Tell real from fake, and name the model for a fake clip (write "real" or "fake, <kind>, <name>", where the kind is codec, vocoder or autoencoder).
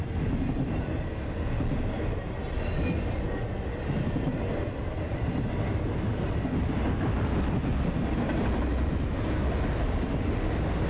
real